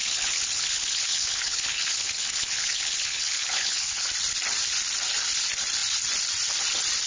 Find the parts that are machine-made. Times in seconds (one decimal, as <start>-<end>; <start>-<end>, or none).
0.0-4.1